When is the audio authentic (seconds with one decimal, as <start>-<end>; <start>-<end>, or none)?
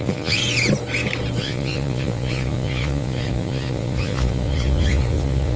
0.4-1.4